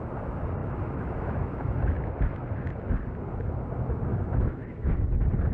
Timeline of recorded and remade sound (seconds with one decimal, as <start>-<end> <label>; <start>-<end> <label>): 0.0-0.6 recorded; 0.6-2.1 remade; 2.1-4.1 recorded; 4.1-5.1 remade; 5.1-5.5 recorded